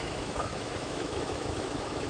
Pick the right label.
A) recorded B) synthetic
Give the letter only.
B